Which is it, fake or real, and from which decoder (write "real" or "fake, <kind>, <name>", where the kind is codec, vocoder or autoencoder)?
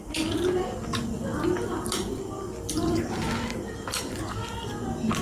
real